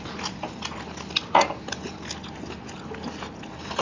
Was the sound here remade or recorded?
recorded